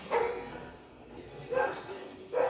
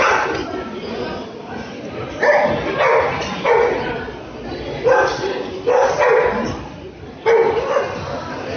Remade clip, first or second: first